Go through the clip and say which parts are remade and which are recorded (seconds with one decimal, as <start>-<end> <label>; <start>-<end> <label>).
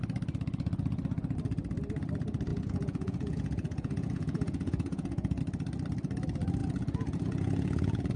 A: 0.0-2.5 recorded; 2.5-5.4 remade; 5.4-6.6 recorded; 6.6-8.2 remade